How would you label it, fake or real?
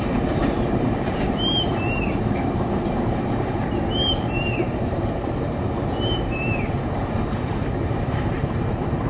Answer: fake